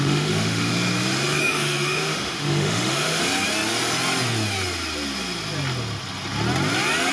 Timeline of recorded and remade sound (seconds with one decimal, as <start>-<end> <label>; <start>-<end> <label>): 0.0-0.7 remade; 0.7-1.4 recorded; 1.4-3.2 remade; 3.2-7.1 recorded